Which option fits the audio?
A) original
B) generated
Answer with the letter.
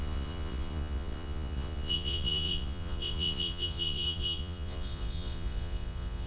B